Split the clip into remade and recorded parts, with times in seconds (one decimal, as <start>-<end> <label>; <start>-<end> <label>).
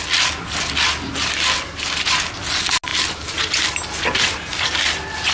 0.0-5.3 recorded